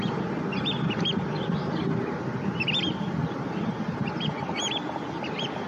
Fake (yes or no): no